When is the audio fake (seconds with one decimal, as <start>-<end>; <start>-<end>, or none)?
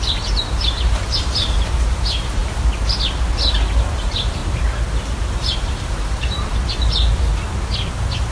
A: 0.0-2.4; 4.0-4.4; 5.2-7.3